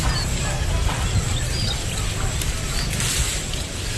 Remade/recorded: recorded